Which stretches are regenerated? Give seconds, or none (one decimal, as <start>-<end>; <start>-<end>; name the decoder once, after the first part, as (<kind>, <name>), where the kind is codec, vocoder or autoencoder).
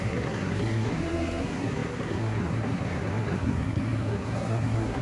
0.0-5.0 (codec, SNAC)